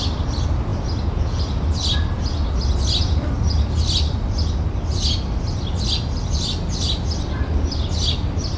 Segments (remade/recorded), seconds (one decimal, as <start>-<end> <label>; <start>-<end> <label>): 0.0-8.6 recorded